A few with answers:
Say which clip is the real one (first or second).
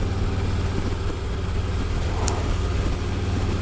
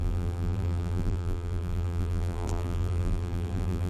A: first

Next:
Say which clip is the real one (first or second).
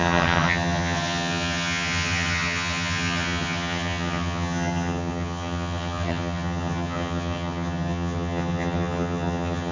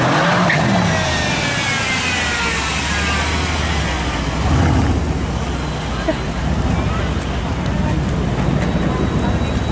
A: second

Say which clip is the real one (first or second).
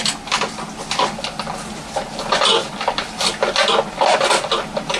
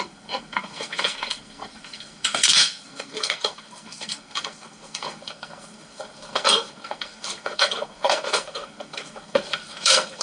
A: first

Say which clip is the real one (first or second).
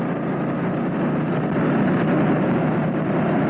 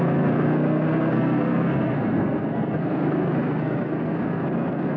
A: first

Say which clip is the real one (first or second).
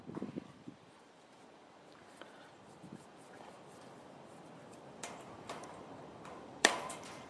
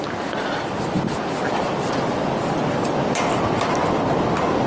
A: second